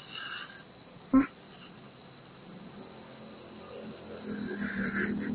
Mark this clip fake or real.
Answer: real